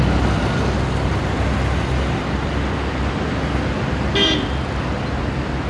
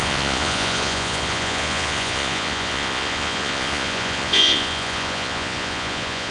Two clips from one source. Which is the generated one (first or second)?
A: second